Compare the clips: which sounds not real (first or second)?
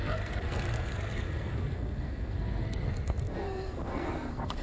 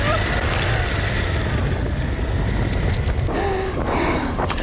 first